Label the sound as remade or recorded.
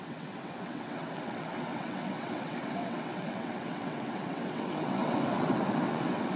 remade